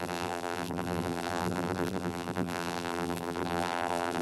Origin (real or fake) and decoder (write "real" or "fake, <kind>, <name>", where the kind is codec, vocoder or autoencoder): fake, vocoder, BigVGAN v2